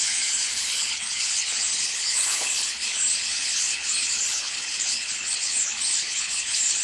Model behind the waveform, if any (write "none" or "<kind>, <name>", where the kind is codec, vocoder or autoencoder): codec, HILCodec